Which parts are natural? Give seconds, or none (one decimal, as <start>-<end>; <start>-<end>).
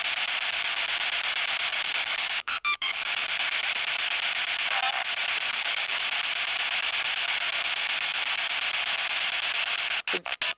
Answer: 0.0-1.7; 3.3-5.5; 6.0-10.6